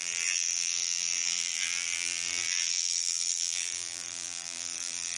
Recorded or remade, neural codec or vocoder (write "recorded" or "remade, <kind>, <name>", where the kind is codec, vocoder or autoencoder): remade, vocoder, BigVGAN v2